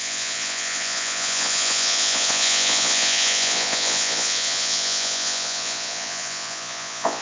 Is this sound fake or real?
fake